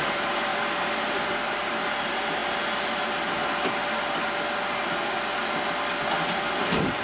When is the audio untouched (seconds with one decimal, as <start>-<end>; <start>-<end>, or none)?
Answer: 0.5-1.0; 2.4-6.6

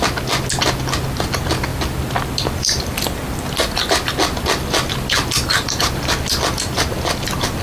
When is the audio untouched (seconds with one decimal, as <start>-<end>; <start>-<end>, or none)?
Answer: 0.0-1.7; 6.0-7.6

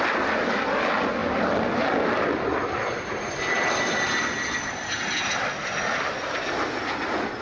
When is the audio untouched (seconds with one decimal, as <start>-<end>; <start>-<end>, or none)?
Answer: 0.0-1.2; 2.8-7.4

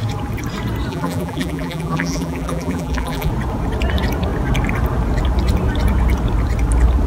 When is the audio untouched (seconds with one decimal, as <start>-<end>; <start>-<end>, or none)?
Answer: 0.0-0.9; 3.3-7.1

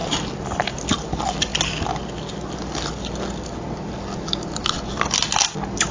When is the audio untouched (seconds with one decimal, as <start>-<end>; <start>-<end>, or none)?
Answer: 0.0-5.9

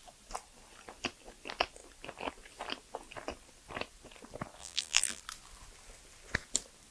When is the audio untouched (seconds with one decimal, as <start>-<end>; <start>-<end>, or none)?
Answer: 0.0-4.6; 5.2-6.9

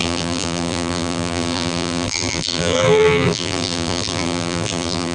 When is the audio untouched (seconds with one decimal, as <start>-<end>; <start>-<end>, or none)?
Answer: none